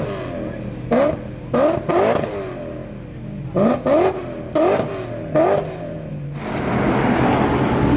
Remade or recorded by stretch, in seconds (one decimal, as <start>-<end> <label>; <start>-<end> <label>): 0.0-8.0 recorded